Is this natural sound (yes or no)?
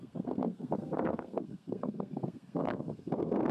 no